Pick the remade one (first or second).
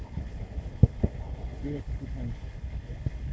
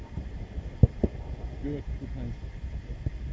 first